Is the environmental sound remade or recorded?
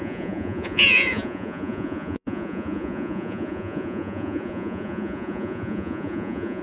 remade